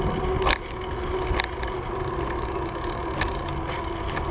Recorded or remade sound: recorded